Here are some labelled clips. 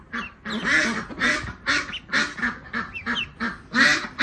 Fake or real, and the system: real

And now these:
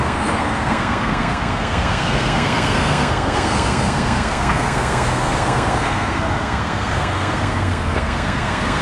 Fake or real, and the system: fake, codec, SNAC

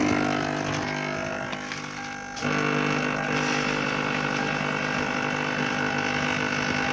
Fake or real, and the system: real